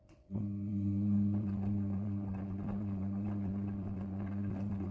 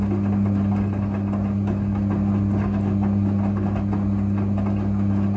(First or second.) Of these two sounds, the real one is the second